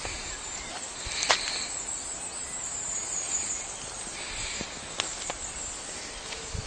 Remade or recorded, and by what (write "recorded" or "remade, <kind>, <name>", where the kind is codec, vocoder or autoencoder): recorded